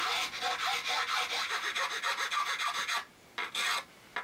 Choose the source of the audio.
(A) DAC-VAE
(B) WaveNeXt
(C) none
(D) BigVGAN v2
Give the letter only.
C